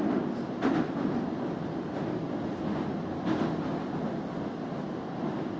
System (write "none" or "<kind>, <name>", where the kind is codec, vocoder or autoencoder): none